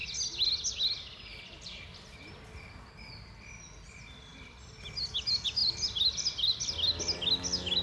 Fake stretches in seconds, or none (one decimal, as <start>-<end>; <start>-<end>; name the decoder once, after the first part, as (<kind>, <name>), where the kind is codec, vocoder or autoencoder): 4.3-5.1 (vocoder, BigVGAN v2); 5.6-6.7